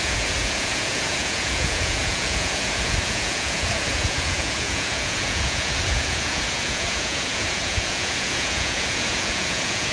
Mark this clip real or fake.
fake